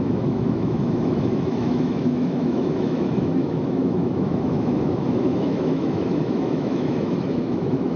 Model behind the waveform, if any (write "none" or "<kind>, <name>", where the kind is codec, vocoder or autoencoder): autoencoder, DAC-VAE